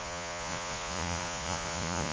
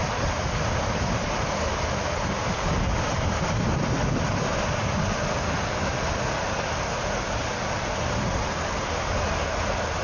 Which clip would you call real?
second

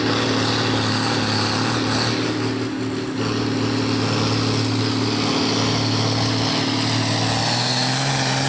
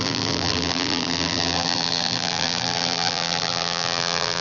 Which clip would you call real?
first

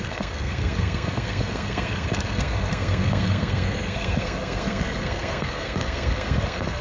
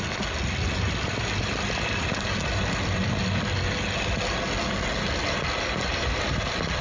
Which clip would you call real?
second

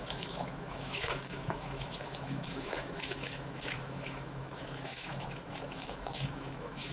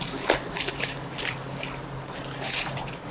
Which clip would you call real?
second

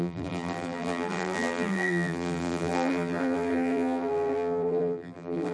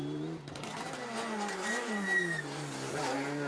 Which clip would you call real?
second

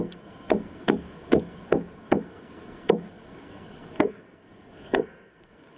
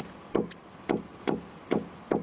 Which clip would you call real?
second